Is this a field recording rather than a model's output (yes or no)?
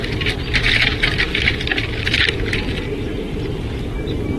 yes